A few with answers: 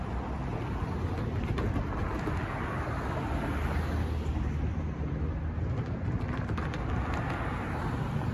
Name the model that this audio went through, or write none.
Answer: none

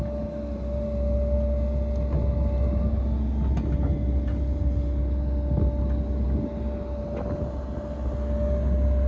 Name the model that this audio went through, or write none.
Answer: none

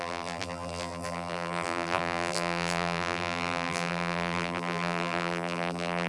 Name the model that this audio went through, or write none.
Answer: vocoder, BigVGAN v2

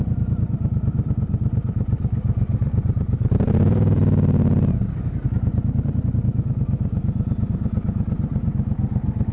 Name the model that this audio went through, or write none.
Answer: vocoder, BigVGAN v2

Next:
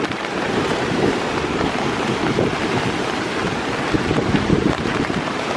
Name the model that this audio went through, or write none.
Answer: vocoder, BigVGAN v2